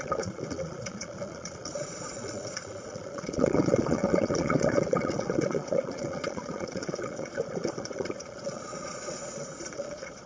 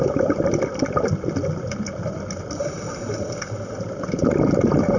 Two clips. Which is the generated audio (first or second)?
first